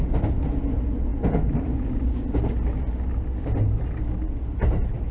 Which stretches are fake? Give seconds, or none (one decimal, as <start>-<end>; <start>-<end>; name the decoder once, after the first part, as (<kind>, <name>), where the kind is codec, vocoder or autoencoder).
none